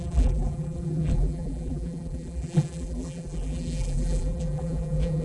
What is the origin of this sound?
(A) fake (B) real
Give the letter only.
A